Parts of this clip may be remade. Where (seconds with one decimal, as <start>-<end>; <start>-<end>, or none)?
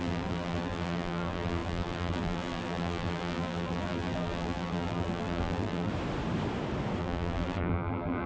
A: 0.0-5.9; 7.0-8.3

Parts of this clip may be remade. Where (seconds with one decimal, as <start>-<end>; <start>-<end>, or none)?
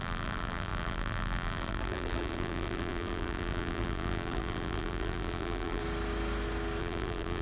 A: 0.0-5.8; 6.8-7.4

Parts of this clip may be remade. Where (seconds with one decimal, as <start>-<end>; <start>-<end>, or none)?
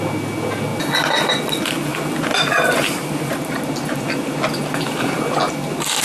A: 1.9-5.5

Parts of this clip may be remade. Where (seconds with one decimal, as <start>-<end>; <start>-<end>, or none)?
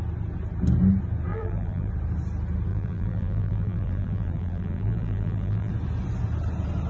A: 1.3-1.9; 2.7-5.7